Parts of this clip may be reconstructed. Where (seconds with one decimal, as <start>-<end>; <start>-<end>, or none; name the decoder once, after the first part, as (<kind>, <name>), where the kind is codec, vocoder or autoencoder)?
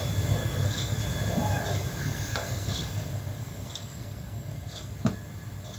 0.4-1.0 (codec, SNAC); 2.0-4.9